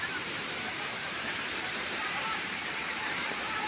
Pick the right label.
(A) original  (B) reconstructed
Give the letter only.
B